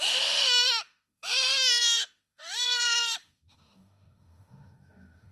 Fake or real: fake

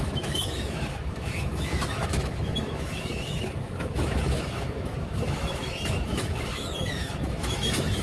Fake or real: fake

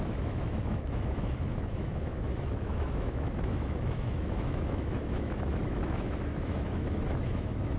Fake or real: fake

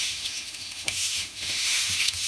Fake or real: fake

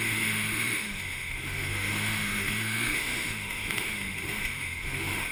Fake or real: fake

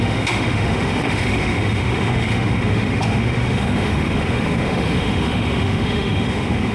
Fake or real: fake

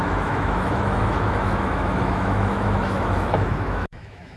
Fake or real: fake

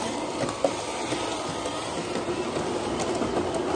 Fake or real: real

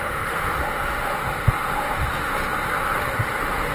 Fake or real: fake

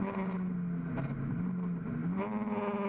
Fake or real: real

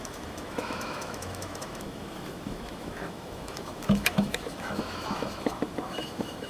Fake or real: fake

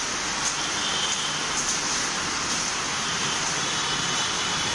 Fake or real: real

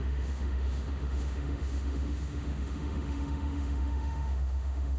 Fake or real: fake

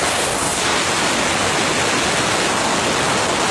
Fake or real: real